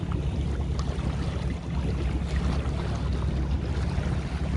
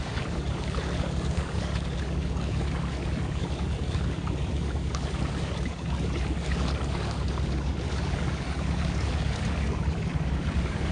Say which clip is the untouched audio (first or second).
first